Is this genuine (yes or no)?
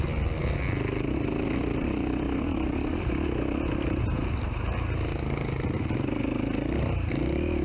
yes